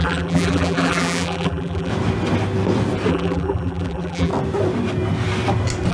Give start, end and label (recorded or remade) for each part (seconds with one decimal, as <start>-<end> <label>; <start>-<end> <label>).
0.0-1.9 remade; 1.9-3.1 recorded; 3.1-4.3 remade; 4.3-5.9 recorded